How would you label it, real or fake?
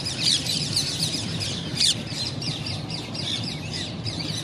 fake